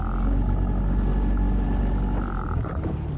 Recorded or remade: recorded